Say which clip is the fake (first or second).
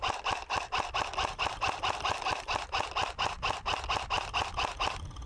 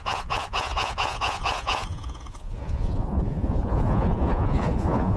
second